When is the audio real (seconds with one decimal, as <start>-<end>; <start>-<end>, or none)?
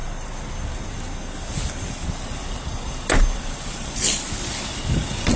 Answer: 0.0-5.4